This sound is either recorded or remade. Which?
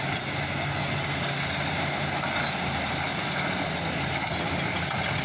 recorded